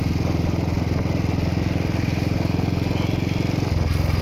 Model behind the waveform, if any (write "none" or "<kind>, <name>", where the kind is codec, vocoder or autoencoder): none